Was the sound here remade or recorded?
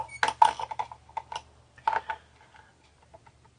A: recorded